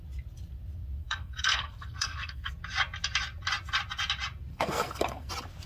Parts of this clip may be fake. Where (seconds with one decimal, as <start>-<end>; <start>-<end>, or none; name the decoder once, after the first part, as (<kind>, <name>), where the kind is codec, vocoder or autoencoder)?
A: 1.0-2.5 (codec, SNAC); 4.5-5.3